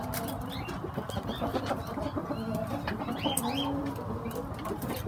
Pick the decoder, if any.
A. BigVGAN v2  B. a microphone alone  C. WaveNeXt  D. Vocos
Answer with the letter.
B